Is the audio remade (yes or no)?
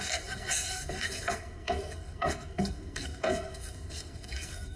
yes